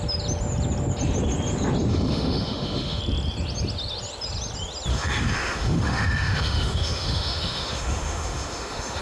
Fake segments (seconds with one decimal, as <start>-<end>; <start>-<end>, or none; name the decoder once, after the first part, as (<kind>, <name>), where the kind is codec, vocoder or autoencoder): 1.9-3.0 (autoencoder, DAC-VAE); 4.9-9.0